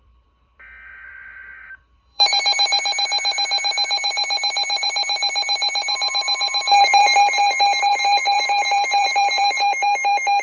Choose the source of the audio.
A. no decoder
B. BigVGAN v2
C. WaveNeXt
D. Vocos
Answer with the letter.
B